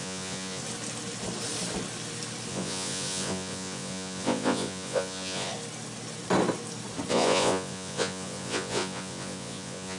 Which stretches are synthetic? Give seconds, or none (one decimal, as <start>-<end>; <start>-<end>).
0.0-0.6; 2.5-5.5; 7.1-10.0